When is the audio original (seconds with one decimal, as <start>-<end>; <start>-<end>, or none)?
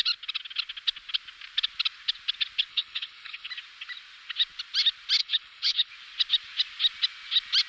0.0-2.7; 3.5-5.2; 5.9-7.7